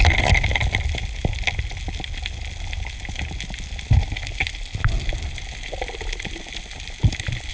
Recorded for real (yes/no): yes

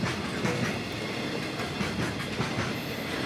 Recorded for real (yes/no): yes